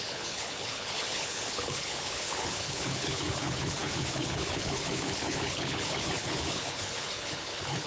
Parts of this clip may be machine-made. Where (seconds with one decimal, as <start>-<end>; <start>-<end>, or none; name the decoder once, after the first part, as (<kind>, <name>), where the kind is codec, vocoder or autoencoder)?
0.0-7.9 (codec, HILCodec)